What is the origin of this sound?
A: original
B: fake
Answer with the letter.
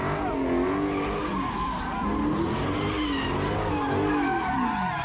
A